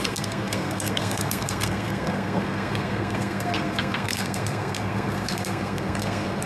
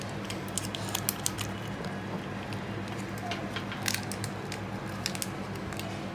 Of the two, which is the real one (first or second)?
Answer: second